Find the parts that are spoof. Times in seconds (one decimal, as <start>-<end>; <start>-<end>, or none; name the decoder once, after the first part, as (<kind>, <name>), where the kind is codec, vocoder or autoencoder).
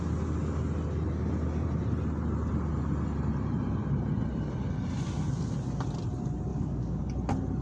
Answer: 6.5-7.0 (codec, DAC)